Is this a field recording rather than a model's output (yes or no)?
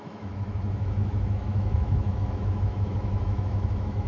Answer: no